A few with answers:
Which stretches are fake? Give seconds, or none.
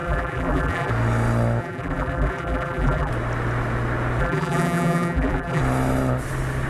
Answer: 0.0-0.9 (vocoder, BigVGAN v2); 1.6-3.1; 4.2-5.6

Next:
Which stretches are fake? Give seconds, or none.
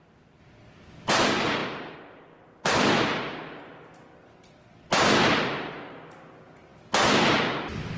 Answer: none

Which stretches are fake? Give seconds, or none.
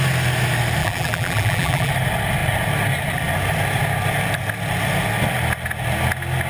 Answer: 0.8-1.9 (vocoder, BigVGAN v2)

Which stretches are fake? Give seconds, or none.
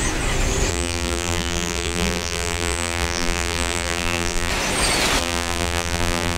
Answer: 0.7-4.5 (vocoder, BigVGAN v2); 5.2-6.4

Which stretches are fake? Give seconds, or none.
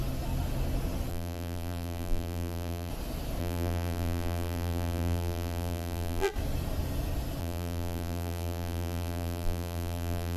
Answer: 1.1-2.9 (vocoder, BigVGAN v2); 3.4-6.3; 7.4-10.4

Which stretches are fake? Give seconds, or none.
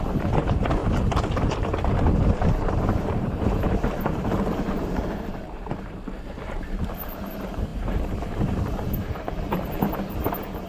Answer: 0.0-0.8 (vocoder, BigVGAN v2); 2.9-10.7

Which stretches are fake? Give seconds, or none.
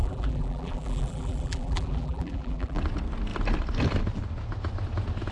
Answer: 0.0-2.8 (vocoder, BigVGAN v2)